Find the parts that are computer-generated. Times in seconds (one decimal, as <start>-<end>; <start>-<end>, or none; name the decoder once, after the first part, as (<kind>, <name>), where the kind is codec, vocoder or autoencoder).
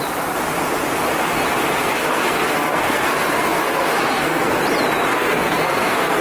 1.8-4.6 (codec, SNAC); 5.1-6.2